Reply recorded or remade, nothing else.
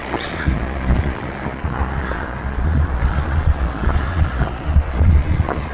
remade